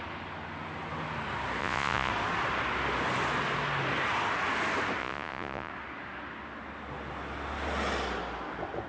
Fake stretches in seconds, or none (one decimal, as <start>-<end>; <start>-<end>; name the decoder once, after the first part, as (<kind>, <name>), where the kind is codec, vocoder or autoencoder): 1.6-2.1 (vocoder, Vocos); 5.0-5.7